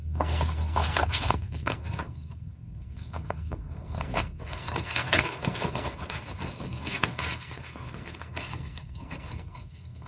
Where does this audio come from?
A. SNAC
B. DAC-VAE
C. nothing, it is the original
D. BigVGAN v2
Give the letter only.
A